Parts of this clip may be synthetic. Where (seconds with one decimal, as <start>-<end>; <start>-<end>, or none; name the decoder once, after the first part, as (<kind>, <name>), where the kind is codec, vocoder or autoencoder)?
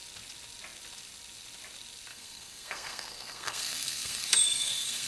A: 2.1-5.1 (codec, SNAC)